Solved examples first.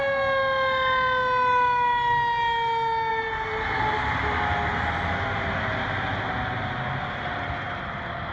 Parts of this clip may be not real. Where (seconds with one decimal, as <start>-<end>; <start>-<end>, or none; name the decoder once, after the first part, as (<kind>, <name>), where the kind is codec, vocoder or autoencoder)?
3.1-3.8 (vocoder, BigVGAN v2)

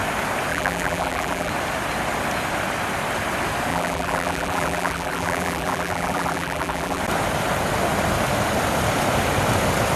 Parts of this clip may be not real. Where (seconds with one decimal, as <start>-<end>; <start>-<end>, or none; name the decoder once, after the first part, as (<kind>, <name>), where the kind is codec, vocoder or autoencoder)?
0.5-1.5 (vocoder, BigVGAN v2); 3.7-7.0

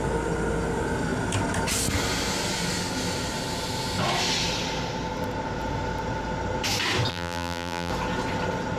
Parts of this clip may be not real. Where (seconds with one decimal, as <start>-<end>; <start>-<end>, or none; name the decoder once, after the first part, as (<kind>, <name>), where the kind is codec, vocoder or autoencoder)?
7.1-7.9 (vocoder, BigVGAN v2)

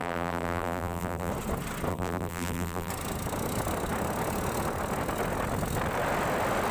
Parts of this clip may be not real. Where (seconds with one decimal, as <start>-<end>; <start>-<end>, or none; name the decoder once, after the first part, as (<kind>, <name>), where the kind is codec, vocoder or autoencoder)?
0.0-1.3 (vocoder, BigVGAN v2); 1.9-2.9

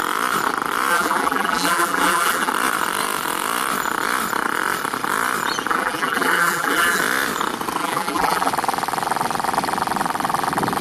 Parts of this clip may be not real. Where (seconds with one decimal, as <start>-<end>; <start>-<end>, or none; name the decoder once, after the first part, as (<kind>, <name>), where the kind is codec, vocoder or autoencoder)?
0.9-2.5 (vocoder, BigVGAN v2); 5.7-7.0; 7.8-8.5

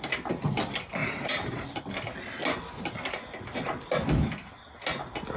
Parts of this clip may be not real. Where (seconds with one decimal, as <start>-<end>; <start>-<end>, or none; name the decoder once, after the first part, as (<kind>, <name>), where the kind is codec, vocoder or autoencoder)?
1.0-1.8 (vocoder, BigVGAN v2)

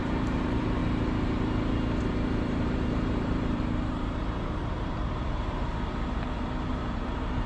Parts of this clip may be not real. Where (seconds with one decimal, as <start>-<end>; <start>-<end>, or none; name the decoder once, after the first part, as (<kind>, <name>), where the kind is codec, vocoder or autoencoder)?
0.0-0.8 (vocoder, BigVGAN v2); 2.0-5.7; 6.7-7.5